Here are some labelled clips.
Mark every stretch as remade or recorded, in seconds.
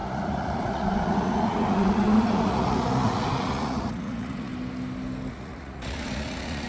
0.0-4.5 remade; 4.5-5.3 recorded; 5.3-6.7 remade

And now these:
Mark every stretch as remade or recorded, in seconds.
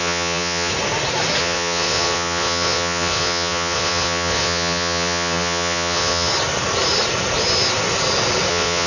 0.0-0.7 remade; 0.7-1.4 recorded; 1.4-6.3 remade; 6.3-8.5 recorded; 8.5-8.9 remade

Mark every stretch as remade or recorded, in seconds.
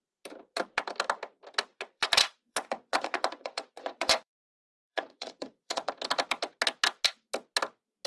0.0-1.7 recorded; 1.7-5.9 remade; 5.9-8.1 recorded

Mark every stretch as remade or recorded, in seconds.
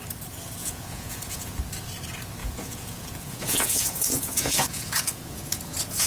0.0-0.6 recorded; 0.6-1.6 remade; 1.6-2.4 recorded; 2.4-6.1 remade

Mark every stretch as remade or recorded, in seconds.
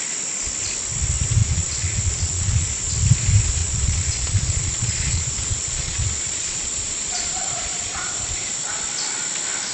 0.0-1.4 recorded; 1.4-2.9 remade; 2.9-3.6 recorded; 3.6-8.8 remade; 8.8-9.7 recorded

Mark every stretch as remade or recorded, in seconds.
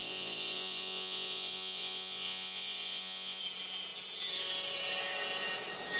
0.0-3.4 remade; 3.4-6.0 recorded